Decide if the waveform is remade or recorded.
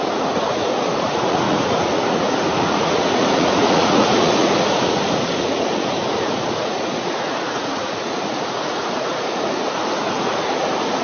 remade